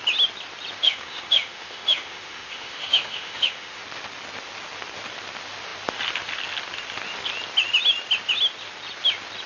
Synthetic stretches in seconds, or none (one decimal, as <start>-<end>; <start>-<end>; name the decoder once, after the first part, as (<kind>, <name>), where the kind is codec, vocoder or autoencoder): 0.8-3.8 (autoencoder, DAC-VAE)